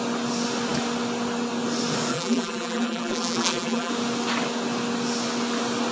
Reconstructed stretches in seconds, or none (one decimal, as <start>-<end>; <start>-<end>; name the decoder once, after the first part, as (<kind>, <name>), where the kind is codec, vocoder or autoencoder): 2.1-3.9 (vocoder, BigVGAN v2)